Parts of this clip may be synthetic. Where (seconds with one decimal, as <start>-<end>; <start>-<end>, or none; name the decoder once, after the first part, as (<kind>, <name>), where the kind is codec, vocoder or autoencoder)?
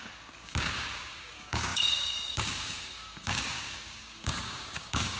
0.0-5.2 (codec, DAC)